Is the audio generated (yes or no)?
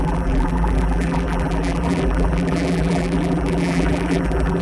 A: yes